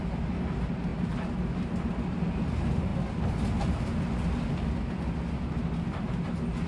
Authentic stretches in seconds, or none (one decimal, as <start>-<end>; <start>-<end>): 0.0-6.7